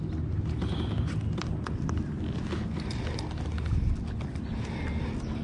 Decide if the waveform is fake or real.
real